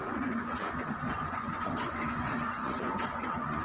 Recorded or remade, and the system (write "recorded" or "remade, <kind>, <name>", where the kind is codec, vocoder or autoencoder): remade, vocoder, Vocos